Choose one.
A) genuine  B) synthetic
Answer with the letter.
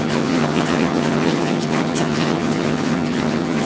B